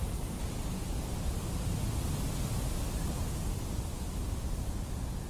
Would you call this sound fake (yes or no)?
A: no